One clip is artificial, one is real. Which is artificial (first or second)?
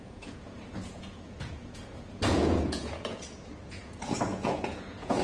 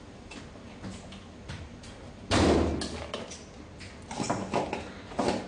first